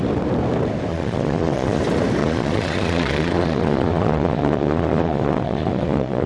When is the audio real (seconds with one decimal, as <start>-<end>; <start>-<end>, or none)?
0.0-0.9; 1.8-2.2